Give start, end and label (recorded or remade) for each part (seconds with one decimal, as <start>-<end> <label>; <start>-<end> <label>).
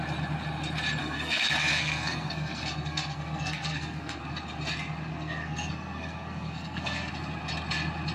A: 0.0-1.0 recorded; 1.0-4.2 remade; 4.2-5.1 recorded; 5.1-7.1 remade; 7.1-8.1 recorded